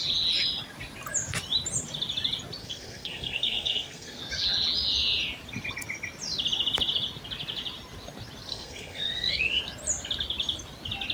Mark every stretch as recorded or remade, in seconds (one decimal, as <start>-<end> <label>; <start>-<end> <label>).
0.0-2.6 recorded; 2.6-4.2 remade; 4.2-8.5 recorded; 8.5-9.6 remade; 9.6-11.1 recorded

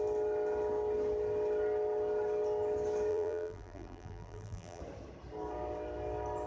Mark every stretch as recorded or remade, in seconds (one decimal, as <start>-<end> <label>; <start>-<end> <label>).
0.0-3.1 recorded; 3.1-4.8 remade; 4.8-6.5 recorded

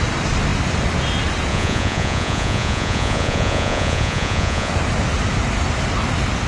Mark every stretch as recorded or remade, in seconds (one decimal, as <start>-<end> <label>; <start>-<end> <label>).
0.0-1.5 recorded; 1.5-4.7 remade; 4.7-6.5 recorded

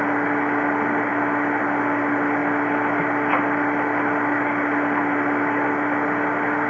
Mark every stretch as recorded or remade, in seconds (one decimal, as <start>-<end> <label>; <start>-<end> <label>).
0.0-6.7 recorded

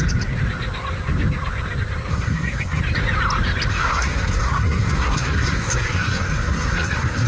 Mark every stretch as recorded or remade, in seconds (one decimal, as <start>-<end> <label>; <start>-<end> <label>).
0.0-2.1 recorded; 2.1-2.8 remade; 2.8-3.7 recorded; 3.7-7.3 remade